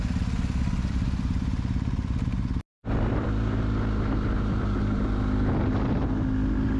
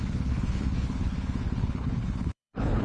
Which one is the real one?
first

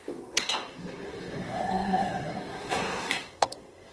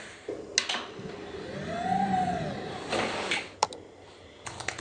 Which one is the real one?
second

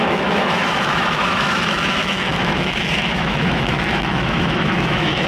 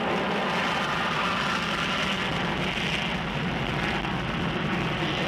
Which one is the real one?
second